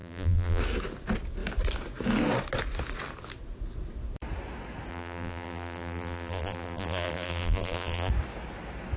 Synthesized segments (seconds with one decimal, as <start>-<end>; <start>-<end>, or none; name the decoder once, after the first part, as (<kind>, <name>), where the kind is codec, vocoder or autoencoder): 0.0-0.6 (vocoder, BigVGAN v2); 4.9-8.1